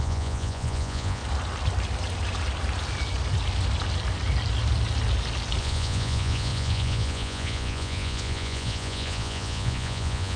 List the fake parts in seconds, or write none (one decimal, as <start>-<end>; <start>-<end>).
0.0-1.2; 5.6-10.4